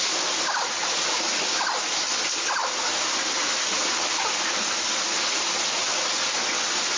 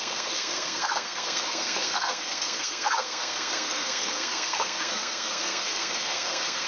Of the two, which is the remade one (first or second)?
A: second